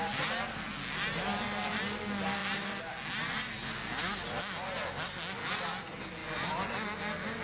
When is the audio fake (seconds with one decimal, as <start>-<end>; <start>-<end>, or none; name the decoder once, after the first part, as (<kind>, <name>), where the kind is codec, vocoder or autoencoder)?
none